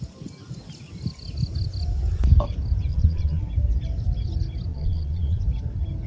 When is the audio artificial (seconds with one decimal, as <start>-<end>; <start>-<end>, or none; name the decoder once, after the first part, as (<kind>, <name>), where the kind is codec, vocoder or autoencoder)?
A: 2.9-3.4 (vocoder, Vocos); 4.7-5.4